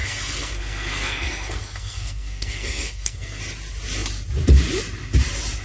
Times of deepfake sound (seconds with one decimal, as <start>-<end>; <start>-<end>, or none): 0.0-3.4